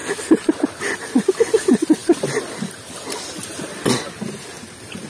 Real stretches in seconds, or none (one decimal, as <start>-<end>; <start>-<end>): 0.0-5.1